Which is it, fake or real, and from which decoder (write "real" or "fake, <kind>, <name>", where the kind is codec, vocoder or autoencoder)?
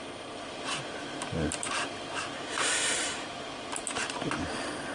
real